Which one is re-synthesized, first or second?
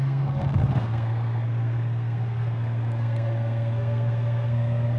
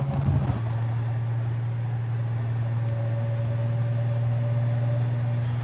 first